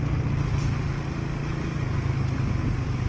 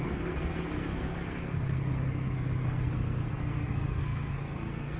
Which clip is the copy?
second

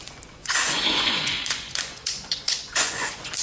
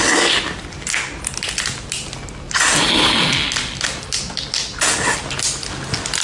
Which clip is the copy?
first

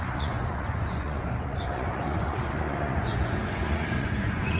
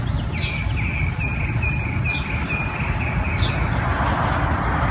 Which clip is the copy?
first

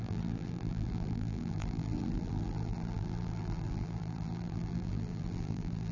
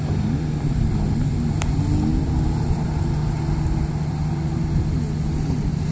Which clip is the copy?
first